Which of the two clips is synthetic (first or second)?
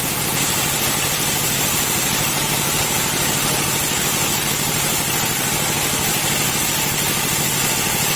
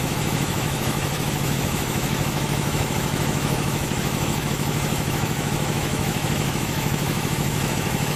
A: second